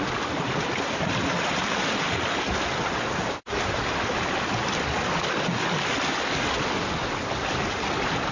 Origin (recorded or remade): recorded